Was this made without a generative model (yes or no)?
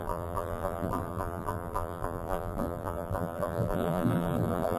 no